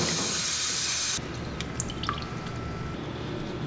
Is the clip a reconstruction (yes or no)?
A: no